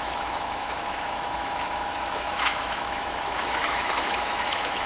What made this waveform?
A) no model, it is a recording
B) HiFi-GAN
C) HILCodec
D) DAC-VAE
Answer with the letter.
D